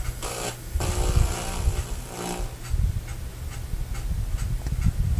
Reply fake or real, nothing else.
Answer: real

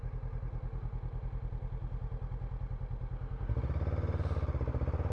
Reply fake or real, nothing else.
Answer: real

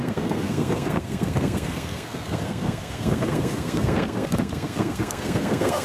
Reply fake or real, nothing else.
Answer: fake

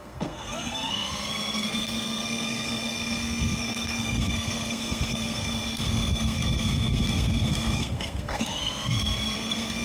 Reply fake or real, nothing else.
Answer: fake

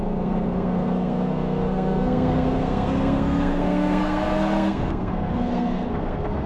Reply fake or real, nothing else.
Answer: fake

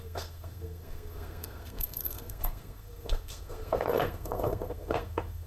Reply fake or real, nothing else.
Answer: fake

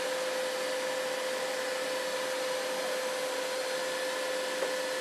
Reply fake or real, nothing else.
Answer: real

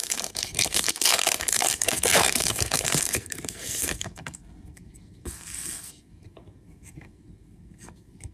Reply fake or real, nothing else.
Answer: fake